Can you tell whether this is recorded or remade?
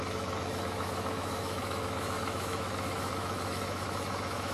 remade